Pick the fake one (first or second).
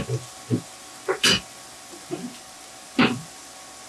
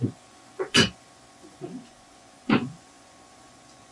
second